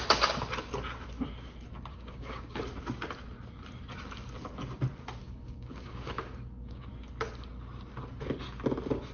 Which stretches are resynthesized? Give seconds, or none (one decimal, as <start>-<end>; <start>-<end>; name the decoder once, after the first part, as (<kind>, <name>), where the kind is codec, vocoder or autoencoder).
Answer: 1.9-2.6 (codec, DAC); 5.2-6.9